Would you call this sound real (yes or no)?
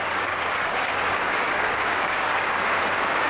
no